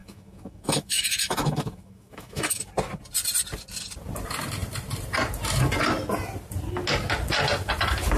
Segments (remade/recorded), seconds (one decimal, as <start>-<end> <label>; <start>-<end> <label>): 0.0-2.6 remade; 2.6-8.2 recorded